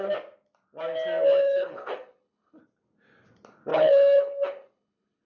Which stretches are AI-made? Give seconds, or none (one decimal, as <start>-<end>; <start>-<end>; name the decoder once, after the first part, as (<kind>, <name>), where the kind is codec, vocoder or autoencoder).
1.4-2.6 (codec, HILCodec); 3.7-5.3